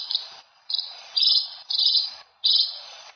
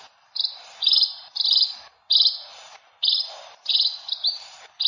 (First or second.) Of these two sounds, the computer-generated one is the first